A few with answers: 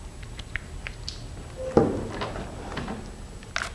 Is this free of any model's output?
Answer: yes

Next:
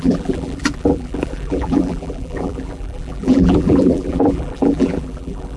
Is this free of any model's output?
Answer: no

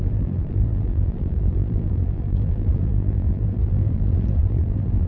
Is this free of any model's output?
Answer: no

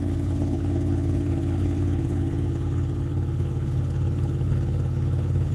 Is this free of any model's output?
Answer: no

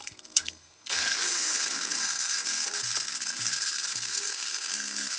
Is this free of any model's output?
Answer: no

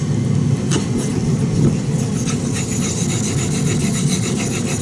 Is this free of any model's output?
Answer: yes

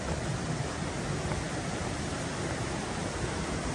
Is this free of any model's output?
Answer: yes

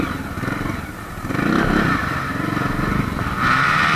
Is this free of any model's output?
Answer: yes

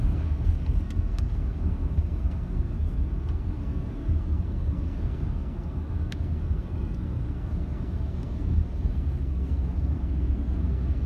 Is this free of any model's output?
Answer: no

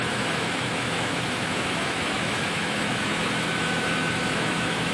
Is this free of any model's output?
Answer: no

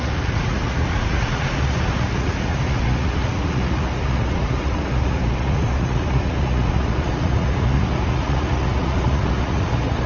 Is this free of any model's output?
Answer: no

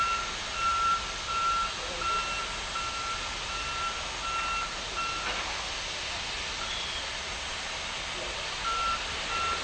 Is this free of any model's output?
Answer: yes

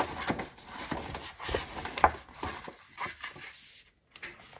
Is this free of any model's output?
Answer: yes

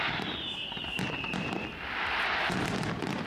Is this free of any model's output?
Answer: yes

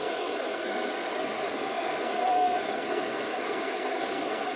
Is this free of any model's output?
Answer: no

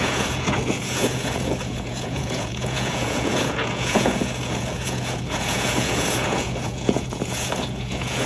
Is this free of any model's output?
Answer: no